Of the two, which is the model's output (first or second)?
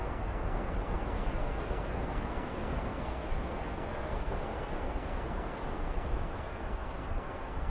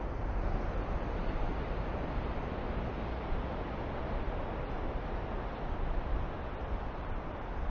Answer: first